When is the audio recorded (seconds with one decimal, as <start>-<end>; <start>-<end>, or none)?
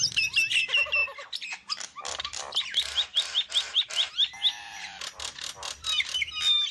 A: none